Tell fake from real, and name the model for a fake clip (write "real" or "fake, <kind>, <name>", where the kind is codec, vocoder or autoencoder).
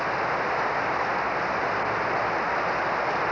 real